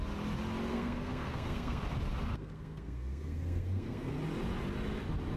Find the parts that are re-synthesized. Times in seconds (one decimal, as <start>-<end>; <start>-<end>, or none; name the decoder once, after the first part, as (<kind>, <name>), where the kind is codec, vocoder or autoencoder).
0.7-1.8 (codec, SNAC); 2.3-4.1